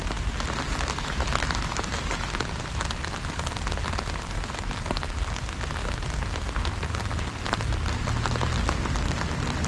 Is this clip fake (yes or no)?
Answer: no